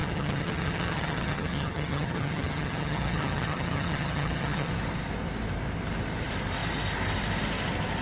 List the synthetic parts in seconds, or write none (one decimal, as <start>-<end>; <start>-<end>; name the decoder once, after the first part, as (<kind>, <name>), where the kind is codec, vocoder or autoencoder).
0.0-4.7 (vocoder, HiFi-GAN)